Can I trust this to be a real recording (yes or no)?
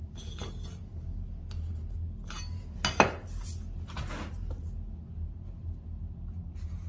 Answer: yes